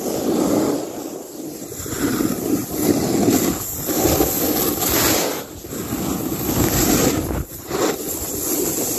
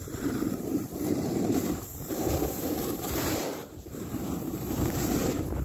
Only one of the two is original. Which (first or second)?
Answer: first